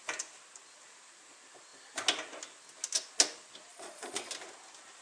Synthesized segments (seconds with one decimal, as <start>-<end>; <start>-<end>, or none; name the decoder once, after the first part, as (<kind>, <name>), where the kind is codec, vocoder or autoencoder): 3.7-4.3 (vocoder, Vocos)